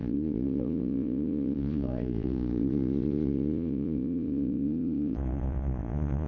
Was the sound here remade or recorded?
remade